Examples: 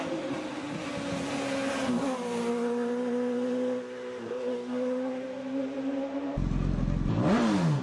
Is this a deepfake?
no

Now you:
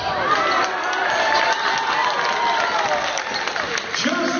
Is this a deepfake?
no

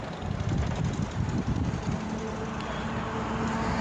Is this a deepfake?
no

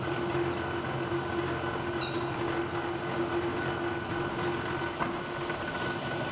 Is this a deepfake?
no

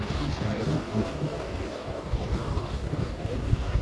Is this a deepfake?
yes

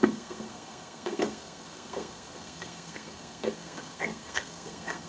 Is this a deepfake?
yes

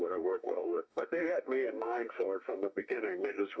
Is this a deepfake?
yes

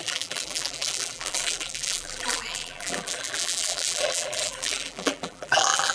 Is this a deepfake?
yes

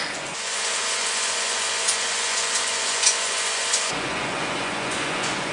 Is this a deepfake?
yes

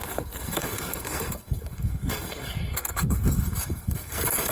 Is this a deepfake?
yes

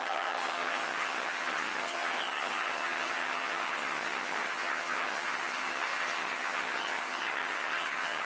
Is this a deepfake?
yes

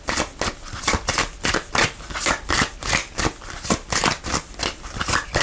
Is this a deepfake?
no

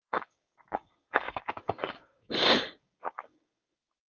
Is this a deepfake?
yes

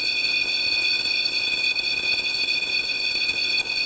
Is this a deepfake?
yes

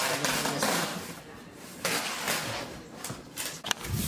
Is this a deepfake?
no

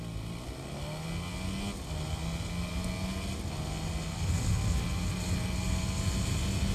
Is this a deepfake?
no